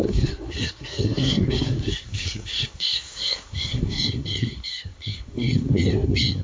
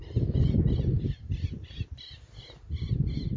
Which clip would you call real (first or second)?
second